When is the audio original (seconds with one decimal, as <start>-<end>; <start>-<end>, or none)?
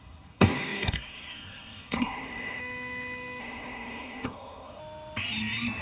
2.6-3.4; 4.8-5.8